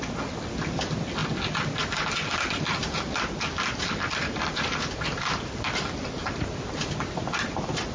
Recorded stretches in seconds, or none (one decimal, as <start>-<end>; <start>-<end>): 0.0-7.9